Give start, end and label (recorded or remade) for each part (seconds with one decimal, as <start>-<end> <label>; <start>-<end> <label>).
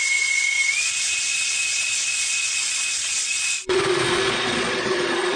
0.0-5.4 remade